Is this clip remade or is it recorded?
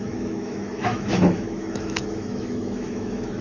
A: remade